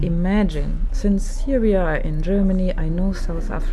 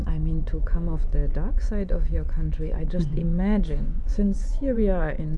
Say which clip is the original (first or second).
first